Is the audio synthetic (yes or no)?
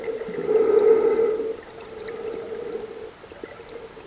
no